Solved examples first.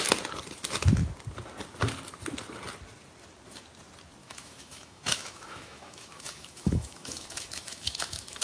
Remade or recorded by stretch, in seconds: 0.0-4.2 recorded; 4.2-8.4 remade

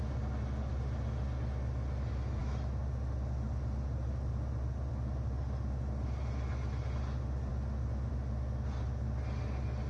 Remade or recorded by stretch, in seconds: 0.0-9.9 recorded

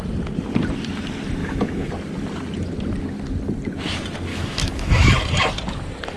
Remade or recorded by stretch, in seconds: 0.0-1.4 recorded; 1.4-1.9 remade; 1.9-4.3 recorded; 4.3-5.1 remade; 5.1-6.2 recorded

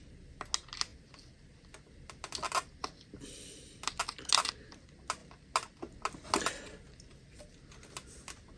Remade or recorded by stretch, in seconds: 0.0-8.6 recorded